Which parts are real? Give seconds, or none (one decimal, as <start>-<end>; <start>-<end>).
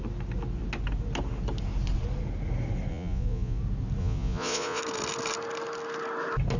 0.0-2.9; 3.6-4.0; 4.8-6.6